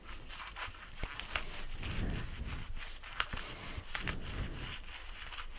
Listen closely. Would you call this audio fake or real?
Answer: real